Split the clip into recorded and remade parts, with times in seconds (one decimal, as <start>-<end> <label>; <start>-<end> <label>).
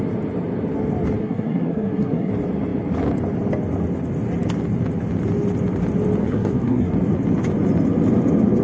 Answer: 0.0-1.2 recorded; 1.2-2.3 remade; 2.3-6.2 recorded; 6.2-6.9 remade; 6.9-8.6 recorded